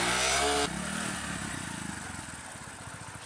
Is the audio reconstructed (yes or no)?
no